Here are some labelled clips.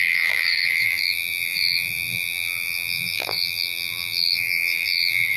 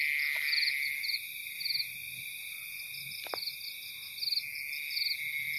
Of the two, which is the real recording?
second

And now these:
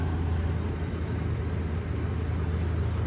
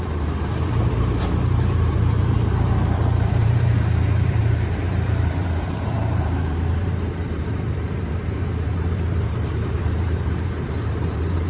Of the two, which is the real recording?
first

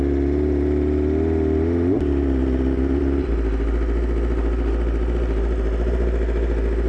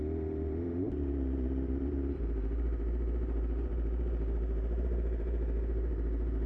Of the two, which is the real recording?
first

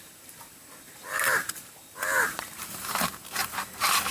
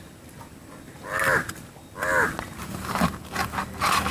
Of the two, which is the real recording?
second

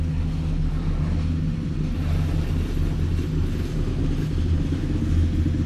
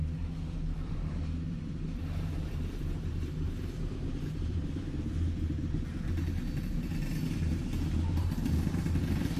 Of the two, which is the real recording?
first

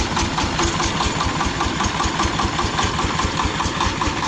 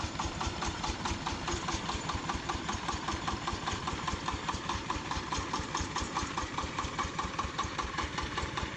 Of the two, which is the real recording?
first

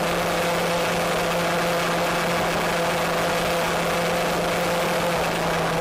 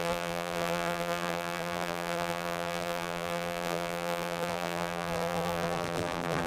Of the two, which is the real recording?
first